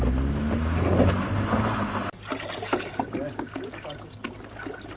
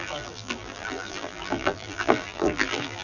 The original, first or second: first